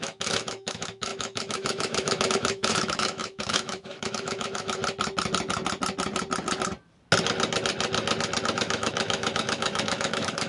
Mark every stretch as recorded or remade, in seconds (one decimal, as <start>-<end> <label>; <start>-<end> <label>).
0.0-4.8 remade; 4.8-8.4 recorded; 8.4-10.5 remade